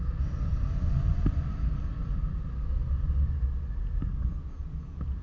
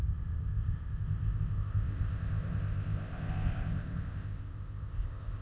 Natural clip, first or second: first